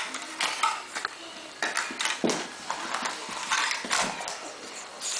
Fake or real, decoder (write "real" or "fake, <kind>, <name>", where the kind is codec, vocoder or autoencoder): real